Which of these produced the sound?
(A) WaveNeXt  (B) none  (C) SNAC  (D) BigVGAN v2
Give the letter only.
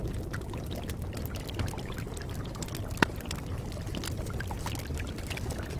B